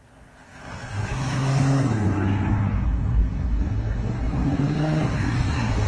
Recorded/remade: remade